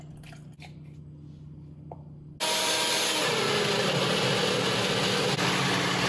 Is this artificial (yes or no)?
no